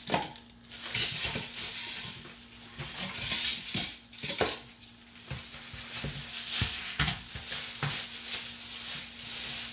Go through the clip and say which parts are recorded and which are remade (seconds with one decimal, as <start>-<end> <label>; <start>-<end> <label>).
0.0-6.3 recorded; 6.3-7.3 remade; 7.3-9.7 recorded